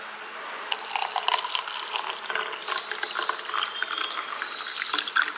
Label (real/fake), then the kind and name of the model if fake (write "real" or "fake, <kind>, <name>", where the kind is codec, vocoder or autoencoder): real